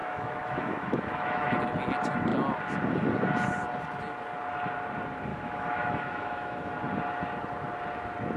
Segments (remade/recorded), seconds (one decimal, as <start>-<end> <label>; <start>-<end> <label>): 0.0-1.5 remade; 1.5-5.3 recorded; 5.3-6.7 remade; 6.7-8.4 recorded